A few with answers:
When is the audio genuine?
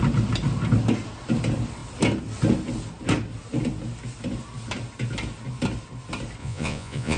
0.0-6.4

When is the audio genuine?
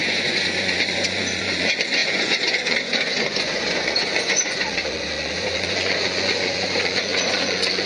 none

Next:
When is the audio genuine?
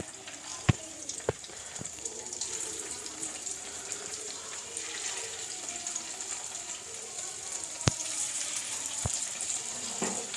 0.0-0.5; 4.7-7.5; 9.9-10.4